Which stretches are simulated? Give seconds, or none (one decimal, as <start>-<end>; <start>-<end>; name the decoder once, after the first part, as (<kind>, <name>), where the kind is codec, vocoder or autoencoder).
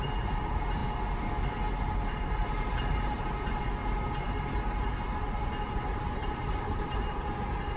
2.4-3.6 (vocoder, BigVGAN v2); 6.2-7.3